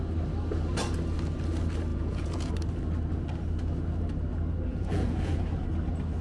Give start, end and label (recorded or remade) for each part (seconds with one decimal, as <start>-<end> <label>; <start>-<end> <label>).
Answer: 0.0-1.9 recorded; 1.9-2.5 remade; 2.5-4.7 recorded; 4.7-5.3 remade; 5.3-6.2 recorded